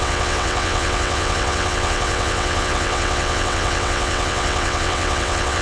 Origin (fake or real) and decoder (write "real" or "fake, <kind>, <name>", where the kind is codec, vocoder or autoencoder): fake, vocoder, WaveNeXt